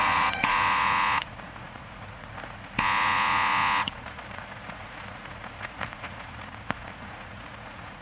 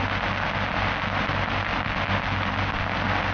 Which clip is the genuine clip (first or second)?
second